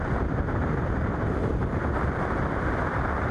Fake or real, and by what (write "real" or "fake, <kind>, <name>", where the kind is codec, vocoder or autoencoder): real